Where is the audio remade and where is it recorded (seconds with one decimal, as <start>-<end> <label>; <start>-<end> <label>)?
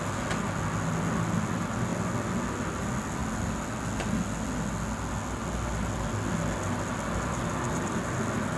0.0-8.6 recorded